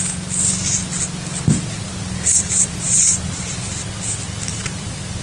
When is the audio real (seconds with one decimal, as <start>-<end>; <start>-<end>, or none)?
0.0-1.9; 3.7-4.5

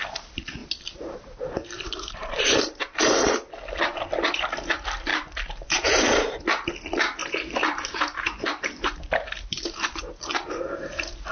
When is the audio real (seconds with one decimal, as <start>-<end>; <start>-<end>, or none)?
0.0-0.6; 3.3-5.1; 6.4-7.2; 10.0-11.3

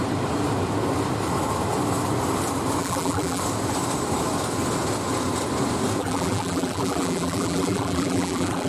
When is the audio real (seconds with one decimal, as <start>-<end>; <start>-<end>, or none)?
0.0-2.8; 3.4-6.0

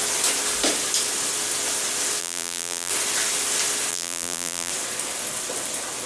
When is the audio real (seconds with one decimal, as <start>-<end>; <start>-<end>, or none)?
0.0-2.2; 2.9-3.9; 4.7-6.1

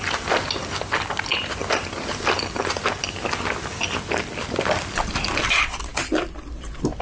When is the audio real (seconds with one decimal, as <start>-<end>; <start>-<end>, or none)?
0.0-5.9; 6.4-7.0

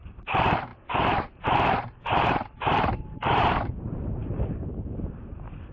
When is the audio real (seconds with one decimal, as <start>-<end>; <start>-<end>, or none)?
none

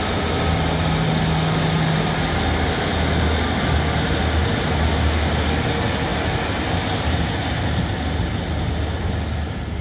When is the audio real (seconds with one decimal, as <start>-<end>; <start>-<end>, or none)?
0.0-9.8

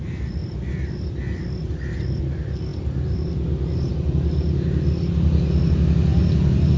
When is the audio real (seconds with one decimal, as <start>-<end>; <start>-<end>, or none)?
0.0-6.1